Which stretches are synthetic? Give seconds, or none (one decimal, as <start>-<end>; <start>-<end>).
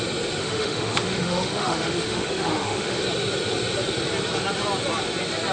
0.4-3.0